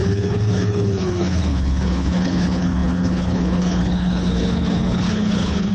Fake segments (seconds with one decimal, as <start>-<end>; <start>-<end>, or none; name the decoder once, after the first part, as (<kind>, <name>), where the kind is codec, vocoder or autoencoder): 0.0-5.7 (codec, HILCodec)